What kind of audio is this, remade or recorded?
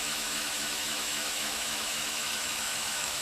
remade